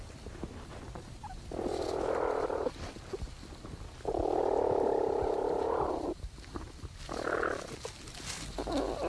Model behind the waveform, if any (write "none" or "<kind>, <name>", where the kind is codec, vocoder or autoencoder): none